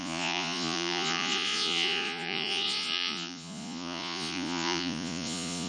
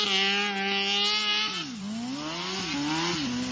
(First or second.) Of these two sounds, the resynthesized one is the first